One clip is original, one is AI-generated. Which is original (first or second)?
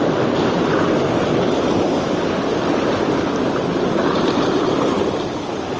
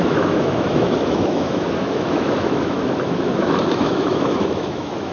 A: first